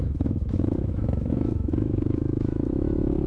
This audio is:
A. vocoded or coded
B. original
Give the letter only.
A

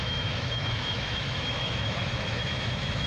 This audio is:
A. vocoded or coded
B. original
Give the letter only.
A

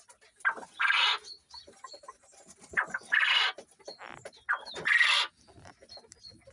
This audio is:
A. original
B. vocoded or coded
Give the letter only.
A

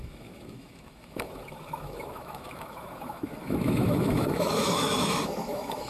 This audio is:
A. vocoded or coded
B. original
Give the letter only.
A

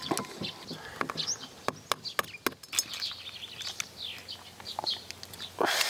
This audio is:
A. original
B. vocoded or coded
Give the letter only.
A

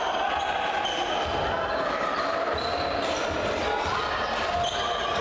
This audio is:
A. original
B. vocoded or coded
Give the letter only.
A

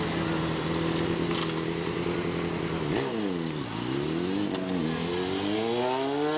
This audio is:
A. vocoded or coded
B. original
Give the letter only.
B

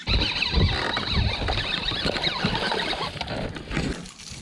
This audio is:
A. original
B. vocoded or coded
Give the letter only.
A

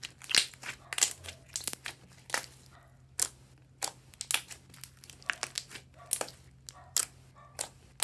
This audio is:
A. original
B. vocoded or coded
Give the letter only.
A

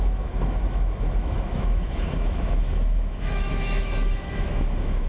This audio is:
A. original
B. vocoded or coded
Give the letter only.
B